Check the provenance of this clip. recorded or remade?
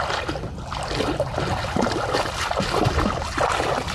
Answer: recorded